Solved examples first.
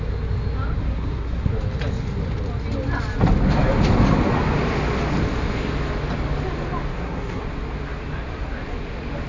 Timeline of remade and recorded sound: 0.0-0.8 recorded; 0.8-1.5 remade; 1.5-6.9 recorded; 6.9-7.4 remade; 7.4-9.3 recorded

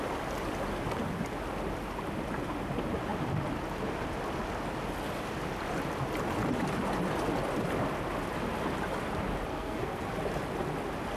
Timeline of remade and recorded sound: 0.0-9.5 recorded; 9.5-10.1 remade; 10.1-11.2 recorded